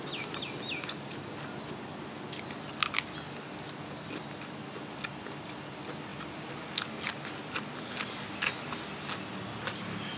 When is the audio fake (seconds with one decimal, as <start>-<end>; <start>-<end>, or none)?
none